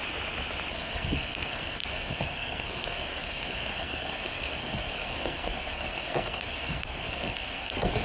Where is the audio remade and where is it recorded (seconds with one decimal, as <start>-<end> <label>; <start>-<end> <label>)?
0.0-0.7 recorded; 0.7-8.0 remade